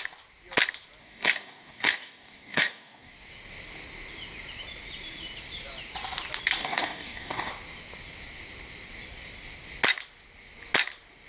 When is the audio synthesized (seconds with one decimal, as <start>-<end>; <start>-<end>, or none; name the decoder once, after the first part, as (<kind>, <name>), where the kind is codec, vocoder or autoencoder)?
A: 1.0-3.1 (codec, DAC); 6.6-7.5